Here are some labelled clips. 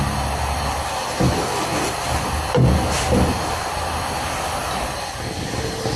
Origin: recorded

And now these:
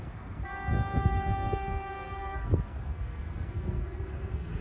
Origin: remade